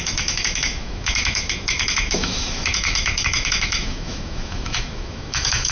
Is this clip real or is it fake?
fake